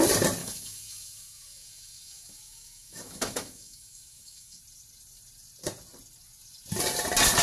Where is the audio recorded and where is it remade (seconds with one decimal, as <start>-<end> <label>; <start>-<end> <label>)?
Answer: 0.0-0.4 recorded; 0.4-4.6 remade; 4.6-7.4 recorded